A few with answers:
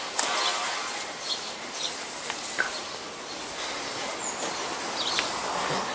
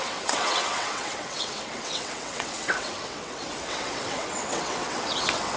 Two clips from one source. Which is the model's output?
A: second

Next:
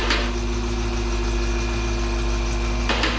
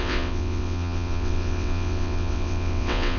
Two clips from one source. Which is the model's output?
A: second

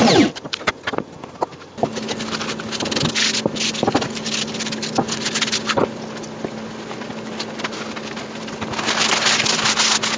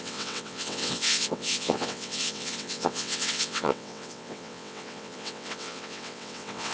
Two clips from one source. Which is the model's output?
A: second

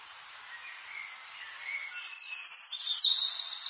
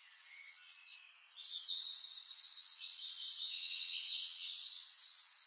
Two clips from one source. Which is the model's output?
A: second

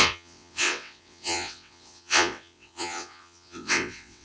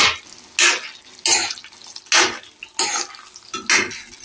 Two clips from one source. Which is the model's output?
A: first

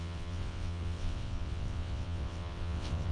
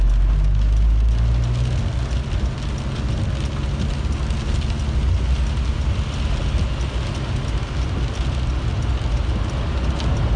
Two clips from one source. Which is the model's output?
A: first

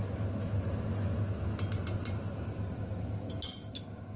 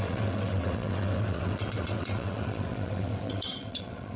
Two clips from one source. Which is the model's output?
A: second